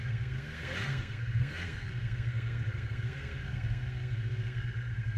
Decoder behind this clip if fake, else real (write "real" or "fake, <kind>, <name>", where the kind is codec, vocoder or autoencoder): fake, codec, SNAC